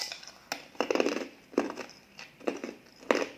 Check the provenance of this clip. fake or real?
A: real